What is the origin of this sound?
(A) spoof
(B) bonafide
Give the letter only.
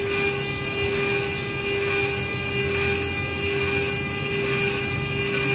B